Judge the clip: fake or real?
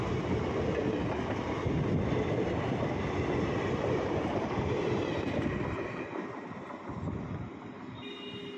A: real